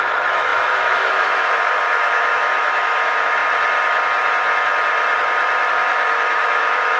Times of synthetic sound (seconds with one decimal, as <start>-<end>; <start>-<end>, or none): 0.0-3.4; 5.7-7.0